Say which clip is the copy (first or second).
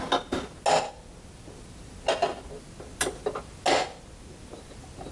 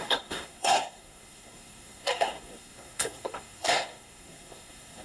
second